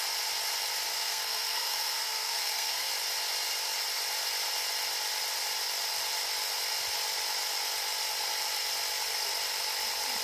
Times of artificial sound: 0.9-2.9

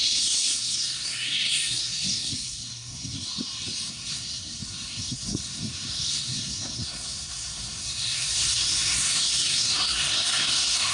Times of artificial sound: 0.0-3.3; 3.9-10.9

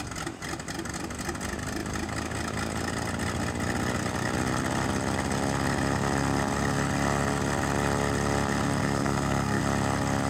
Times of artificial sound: 8.8-9.6

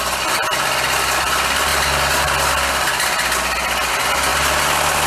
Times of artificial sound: none

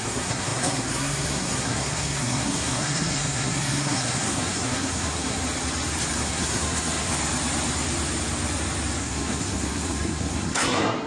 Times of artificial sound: 0.0-5.4; 6.1-7.1; 9.0-11.1